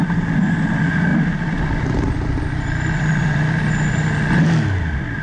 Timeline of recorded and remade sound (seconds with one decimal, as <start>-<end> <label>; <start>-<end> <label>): 0.0-5.2 recorded